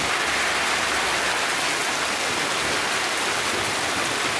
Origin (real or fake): real